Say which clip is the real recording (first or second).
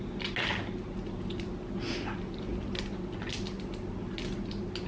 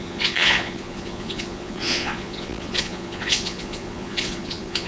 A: first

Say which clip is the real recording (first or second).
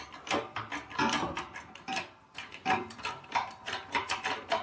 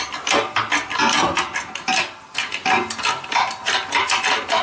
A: second